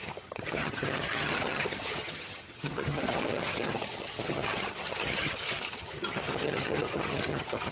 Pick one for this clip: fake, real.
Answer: fake